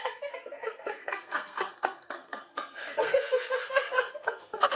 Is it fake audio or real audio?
fake